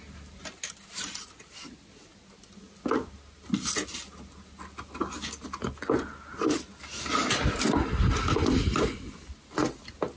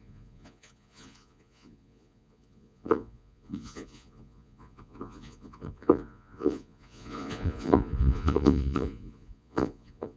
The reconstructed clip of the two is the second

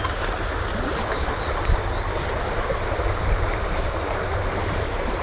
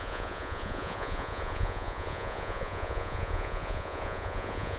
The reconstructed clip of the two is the second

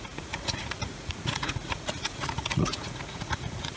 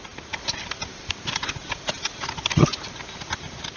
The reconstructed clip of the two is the first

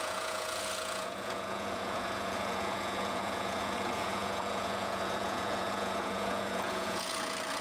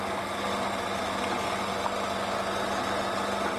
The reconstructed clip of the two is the first